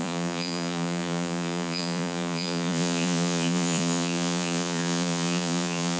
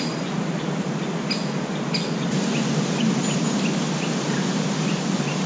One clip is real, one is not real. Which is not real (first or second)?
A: first